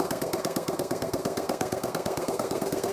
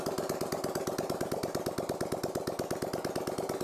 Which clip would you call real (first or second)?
second